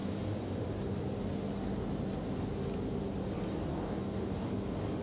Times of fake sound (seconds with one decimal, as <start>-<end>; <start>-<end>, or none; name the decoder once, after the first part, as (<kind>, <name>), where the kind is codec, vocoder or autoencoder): 3.7-4.5 (codec, DAC)